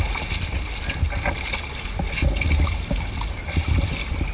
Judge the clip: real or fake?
real